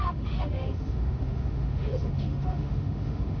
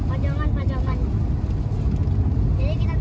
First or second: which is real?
second